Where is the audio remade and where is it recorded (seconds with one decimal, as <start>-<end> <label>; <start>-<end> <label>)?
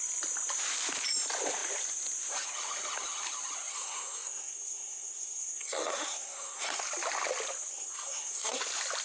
0.0-3.7 recorded; 3.7-6.8 remade; 6.8-7.7 recorded; 7.7-8.6 remade; 8.6-9.0 recorded